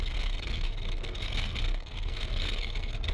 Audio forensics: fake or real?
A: fake